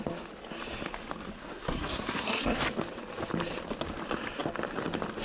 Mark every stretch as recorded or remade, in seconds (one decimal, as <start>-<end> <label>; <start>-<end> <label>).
0.0-1.4 recorded; 1.4-2.6 remade; 2.6-5.2 recorded